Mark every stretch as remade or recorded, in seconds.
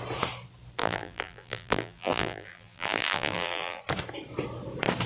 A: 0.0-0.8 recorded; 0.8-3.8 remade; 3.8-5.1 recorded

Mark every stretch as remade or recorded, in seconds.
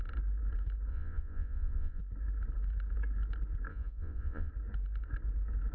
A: 0.0-0.9 recorded; 0.9-2.0 remade; 2.0-3.7 recorded; 3.7-4.5 remade; 4.5-5.7 recorded